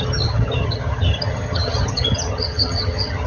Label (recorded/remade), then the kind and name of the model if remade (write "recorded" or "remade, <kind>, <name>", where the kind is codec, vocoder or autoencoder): remade, vocoder, HiFi-GAN